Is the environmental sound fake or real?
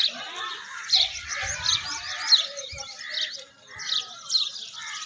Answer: fake